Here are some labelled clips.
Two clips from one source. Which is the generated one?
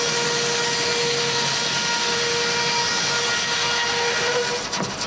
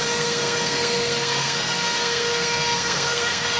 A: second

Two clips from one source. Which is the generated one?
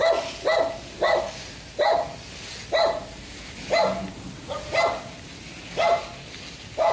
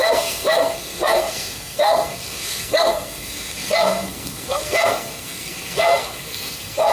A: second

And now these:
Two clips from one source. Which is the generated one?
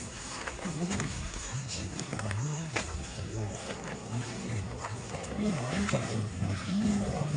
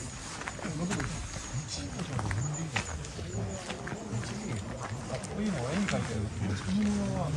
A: first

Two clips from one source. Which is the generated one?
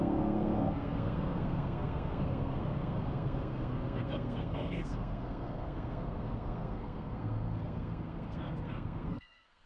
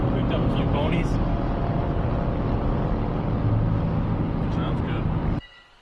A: first